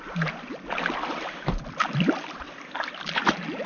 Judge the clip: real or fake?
real